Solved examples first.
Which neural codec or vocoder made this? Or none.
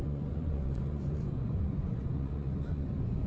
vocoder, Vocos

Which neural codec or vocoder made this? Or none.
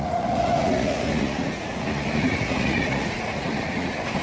vocoder, Vocos